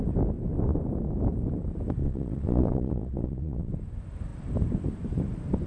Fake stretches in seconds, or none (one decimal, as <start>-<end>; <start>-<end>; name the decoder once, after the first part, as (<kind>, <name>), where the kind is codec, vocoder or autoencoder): 2.0-3.7 (vocoder, Vocos)